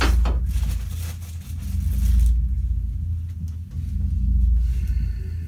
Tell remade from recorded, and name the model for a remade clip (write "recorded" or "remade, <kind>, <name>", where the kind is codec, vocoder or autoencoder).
recorded